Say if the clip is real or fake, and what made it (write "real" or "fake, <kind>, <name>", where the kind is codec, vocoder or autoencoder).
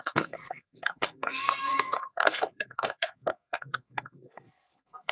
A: fake, codec, SNAC